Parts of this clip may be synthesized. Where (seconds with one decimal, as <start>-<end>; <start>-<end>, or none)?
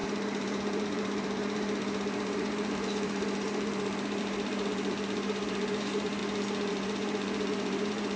0.0-6.2; 6.7-8.2